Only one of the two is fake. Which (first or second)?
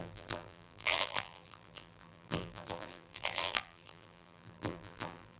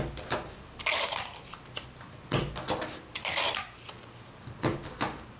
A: first